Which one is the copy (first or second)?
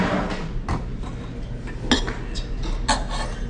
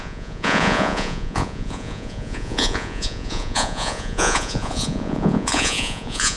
second